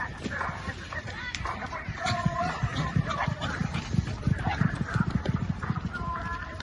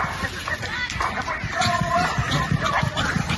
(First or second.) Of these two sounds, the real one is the second